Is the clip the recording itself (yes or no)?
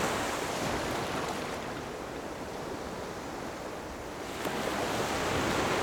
yes